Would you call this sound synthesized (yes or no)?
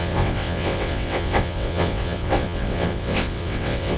yes